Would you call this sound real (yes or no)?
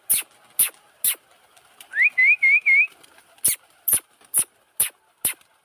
yes